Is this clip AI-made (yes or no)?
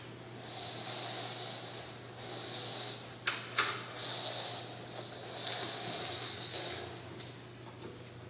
no